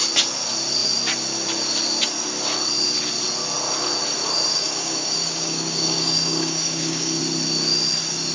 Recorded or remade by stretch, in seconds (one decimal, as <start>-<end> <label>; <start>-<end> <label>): 0.0-4.5 recorded; 4.5-7.2 remade; 7.2-8.3 recorded